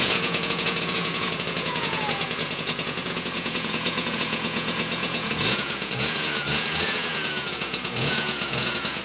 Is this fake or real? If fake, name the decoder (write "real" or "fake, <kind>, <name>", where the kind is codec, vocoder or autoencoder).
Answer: fake, vocoder, Vocos